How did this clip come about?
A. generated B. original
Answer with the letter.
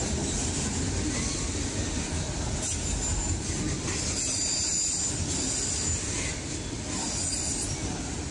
B